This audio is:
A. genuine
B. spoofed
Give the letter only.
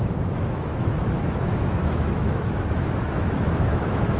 B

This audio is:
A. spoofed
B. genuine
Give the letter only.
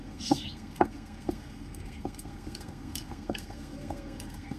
A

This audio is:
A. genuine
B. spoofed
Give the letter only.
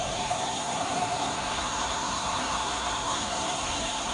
B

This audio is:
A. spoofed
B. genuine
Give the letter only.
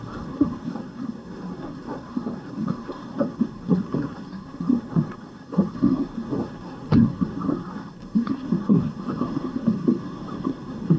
A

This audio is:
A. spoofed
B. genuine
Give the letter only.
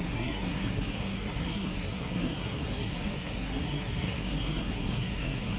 A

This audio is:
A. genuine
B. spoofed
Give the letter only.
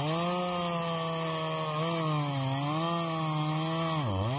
A